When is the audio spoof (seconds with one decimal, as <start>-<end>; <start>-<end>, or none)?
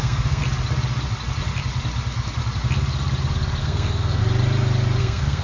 0.0-0.4; 3.6-4.2; 5.0-5.4